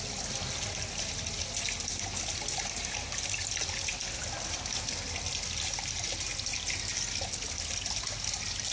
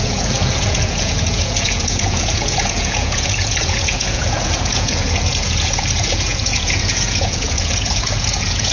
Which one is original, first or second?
first